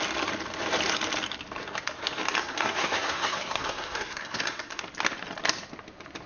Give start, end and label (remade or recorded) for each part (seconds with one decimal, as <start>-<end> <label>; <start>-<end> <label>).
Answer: 0.0-2.4 recorded; 2.4-4.8 remade; 4.8-6.3 recorded